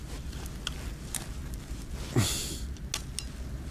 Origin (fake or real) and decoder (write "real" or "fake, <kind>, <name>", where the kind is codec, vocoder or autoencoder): real